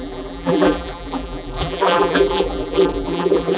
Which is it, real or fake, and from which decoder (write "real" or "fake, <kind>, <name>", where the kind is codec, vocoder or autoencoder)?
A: fake, vocoder, BigVGAN v2